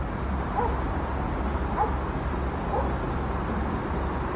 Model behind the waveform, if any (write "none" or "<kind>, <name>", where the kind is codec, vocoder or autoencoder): none